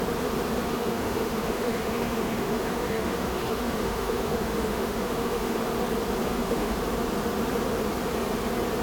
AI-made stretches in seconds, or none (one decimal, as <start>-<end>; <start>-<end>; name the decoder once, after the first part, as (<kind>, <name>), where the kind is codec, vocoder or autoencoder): 0.7-5.6 (autoencoder, DAC-VAE); 6.2-6.8